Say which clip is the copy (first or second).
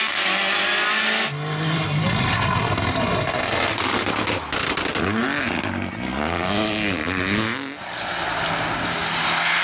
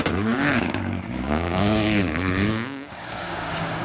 second